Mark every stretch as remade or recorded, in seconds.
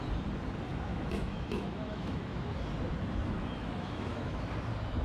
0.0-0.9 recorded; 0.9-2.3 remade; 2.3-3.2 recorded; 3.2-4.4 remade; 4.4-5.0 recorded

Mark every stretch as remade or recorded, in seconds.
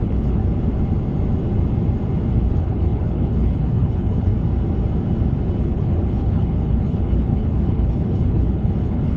0.0-0.4 remade; 0.4-2.5 recorded; 2.5-4.3 remade; 4.3-5.6 recorded; 5.6-9.2 remade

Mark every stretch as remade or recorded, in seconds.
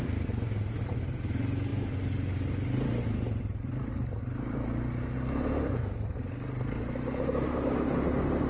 0.0-8.5 recorded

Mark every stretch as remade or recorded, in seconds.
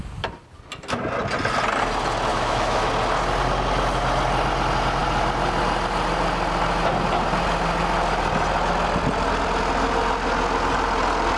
0.0-2.3 recorded; 2.3-2.9 remade; 2.9-11.4 recorded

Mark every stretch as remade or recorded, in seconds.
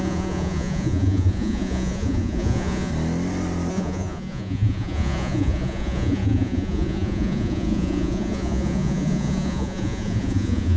0.0-2.9 remade; 2.9-3.7 recorded; 3.7-10.8 remade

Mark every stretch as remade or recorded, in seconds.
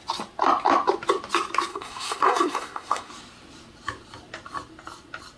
0.0-1.7 recorded; 1.7-3.1 remade; 3.1-5.4 recorded